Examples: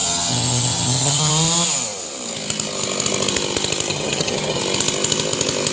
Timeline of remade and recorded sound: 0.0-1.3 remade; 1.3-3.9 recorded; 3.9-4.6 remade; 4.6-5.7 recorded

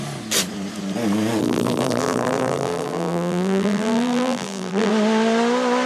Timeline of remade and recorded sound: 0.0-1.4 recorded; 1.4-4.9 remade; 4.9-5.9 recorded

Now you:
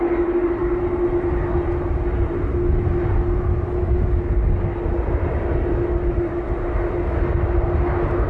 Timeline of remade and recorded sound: 0.0-8.3 recorded